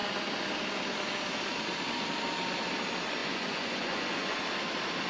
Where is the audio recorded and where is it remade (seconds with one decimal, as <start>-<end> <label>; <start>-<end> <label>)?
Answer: 0.0-3.2 recorded; 3.2-4.4 remade; 4.4-5.1 recorded